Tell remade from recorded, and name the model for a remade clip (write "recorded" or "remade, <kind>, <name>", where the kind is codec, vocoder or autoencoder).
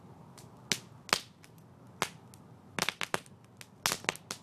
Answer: recorded